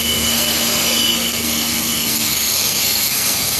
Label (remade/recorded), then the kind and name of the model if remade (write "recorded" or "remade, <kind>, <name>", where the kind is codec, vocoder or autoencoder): remade, codec, SNAC